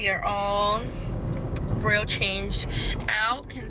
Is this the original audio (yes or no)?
no